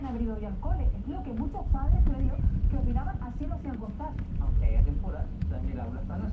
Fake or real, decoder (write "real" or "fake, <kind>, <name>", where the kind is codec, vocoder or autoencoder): real